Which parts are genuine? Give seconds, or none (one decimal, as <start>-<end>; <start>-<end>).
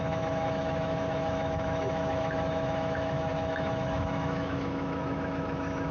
none